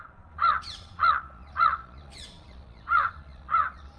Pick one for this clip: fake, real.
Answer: fake